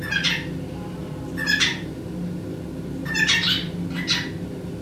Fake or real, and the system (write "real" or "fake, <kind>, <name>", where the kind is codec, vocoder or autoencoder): real